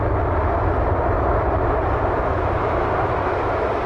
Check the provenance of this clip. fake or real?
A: real